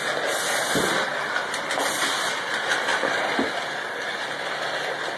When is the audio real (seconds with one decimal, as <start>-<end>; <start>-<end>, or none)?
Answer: 0.0-5.2